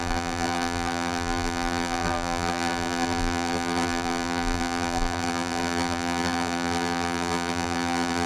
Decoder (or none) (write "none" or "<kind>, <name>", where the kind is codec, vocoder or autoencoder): vocoder, BigVGAN v2